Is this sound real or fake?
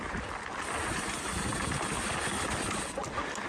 real